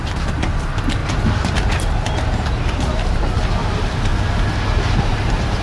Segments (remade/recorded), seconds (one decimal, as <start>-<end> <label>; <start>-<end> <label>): 0.0-1.0 remade; 1.0-3.1 recorded; 3.1-4.1 remade; 4.1-5.0 recorded; 5.0-5.6 remade